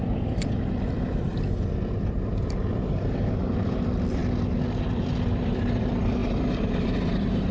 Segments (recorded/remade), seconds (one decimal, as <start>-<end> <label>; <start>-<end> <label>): 0.0-1.3 remade; 1.3-2.0 recorded; 2.0-4.2 remade; 4.2-4.8 recorded; 4.8-7.5 remade